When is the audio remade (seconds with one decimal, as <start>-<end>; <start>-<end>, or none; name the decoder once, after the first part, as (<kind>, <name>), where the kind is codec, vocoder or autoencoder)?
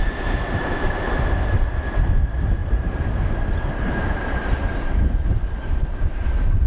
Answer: 0.0-0.9 (vocoder, BigVGAN v2); 2.6-6.7